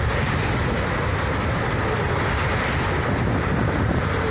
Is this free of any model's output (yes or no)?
yes